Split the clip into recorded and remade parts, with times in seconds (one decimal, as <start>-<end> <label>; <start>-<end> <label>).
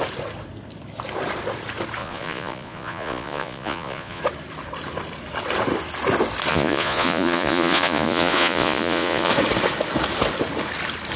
0.0-2.0 recorded; 2.0-4.2 remade; 4.2-6.5 recorded; 6.5-9.3 remade; 9.3-11.2 recorded